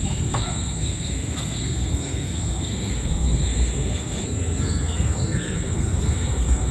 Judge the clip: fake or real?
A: fake